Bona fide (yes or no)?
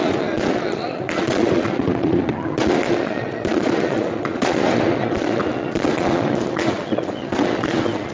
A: no